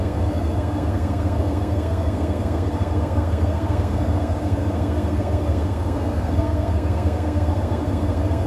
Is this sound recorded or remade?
remade